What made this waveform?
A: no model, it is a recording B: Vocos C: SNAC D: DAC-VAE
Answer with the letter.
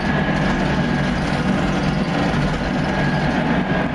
A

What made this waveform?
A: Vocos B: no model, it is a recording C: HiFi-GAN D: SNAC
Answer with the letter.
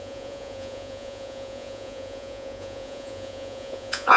A